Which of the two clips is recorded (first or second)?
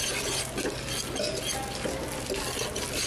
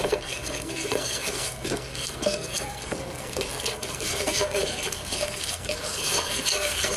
first